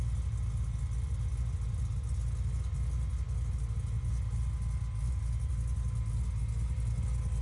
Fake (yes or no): no